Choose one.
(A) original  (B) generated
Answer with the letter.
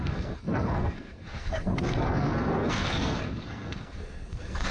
B